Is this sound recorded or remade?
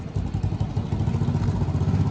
recorded